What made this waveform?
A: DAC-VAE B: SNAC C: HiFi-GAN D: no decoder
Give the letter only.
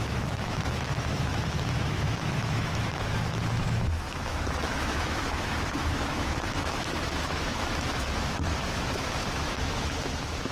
A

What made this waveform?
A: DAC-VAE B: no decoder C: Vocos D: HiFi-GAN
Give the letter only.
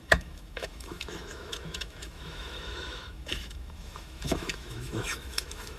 A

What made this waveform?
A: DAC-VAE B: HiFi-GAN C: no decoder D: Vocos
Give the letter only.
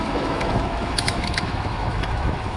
A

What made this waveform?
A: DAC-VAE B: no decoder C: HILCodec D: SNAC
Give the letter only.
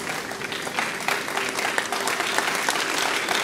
B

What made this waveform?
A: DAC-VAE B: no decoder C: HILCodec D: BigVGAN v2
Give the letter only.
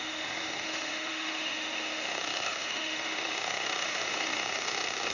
A